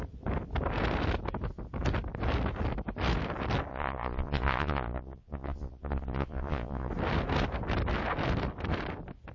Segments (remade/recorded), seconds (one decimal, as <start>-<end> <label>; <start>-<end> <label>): 0.0-3.7 recorded; 3.7-6.9 remade; 6.9-9.3 recorded